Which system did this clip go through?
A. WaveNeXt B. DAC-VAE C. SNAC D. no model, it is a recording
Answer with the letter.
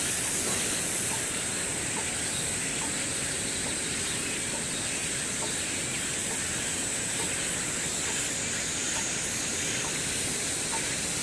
D